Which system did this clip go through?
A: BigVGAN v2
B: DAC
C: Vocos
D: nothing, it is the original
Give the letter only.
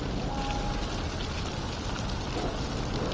D